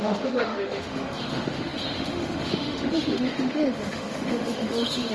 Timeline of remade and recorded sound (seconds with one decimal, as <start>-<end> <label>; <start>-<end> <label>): 0.0-5.1 remade